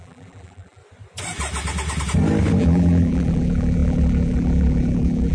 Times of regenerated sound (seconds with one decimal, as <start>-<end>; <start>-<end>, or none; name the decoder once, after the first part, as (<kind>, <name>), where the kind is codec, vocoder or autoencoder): 0.0-0.8 (vocoder, BigVGAN v2); 2.6-5.3